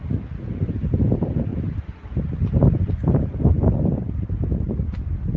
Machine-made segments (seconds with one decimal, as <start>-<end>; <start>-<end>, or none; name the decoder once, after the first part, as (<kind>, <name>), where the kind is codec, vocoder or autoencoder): 1.5-4.3 (vocoder, BigVGAN v2)